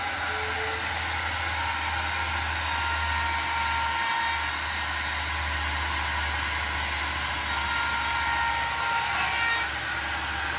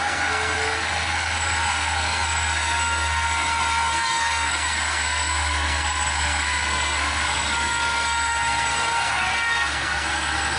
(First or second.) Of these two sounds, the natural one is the first